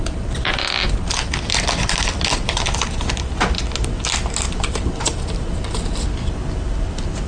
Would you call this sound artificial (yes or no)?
no